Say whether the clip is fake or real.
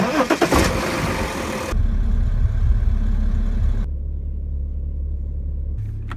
real